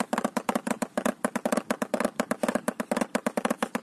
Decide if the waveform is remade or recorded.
recorded